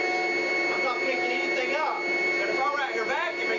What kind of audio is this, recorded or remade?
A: recorded